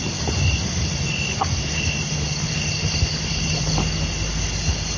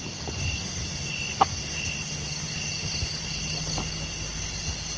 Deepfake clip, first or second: first